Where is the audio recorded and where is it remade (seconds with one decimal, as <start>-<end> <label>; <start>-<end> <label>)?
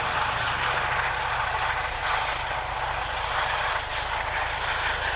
0.0-5.2 recorded